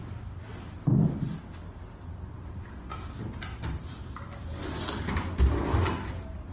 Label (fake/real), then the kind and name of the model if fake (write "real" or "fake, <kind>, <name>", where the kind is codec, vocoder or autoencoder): real